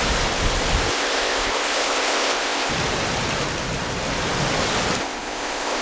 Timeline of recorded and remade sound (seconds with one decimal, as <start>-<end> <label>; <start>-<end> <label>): 0.0-0.9 recorded; 0.9-2.7 remade; 2.7-5.0 recorded; 5.0-5.8 remade